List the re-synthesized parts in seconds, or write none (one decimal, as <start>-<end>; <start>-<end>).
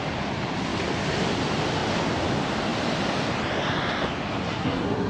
4.4-5.1